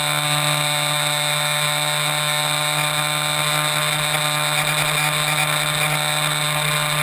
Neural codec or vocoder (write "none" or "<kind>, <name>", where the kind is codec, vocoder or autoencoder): none